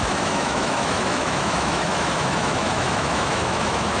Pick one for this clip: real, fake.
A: fake